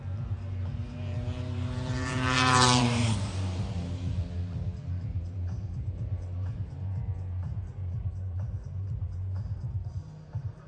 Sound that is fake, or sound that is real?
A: fake